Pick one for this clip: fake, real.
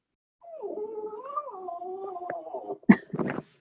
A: real